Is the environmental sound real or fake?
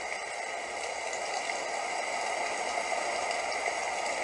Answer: fake